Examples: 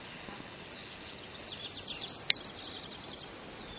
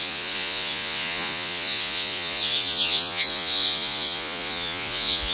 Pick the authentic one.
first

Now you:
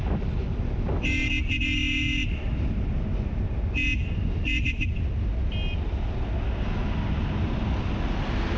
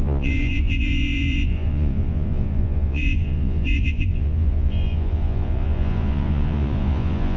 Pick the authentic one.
first